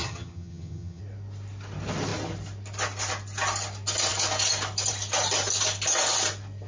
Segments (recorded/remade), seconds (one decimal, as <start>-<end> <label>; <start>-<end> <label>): 0.0-1.0 remade; 1.0-6.7 recorded

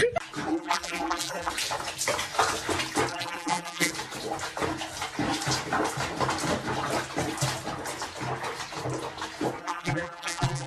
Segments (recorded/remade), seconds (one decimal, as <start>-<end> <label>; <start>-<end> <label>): 0.0-0.5 recorded; 0.5-1.5 remade; 1.5-3.1 recorded; 3.1-3.9 remade; 3.9-9.6 recorded; 9.6-10.7 remade

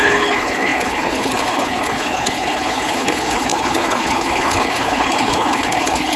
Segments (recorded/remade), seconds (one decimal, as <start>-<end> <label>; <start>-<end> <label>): 0.0-6.2 remade